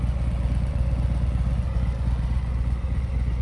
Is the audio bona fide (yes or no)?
no